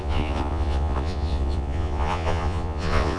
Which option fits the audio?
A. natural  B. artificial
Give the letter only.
B